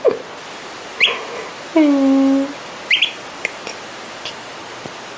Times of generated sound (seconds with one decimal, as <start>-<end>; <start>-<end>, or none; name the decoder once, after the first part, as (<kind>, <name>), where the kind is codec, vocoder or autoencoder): none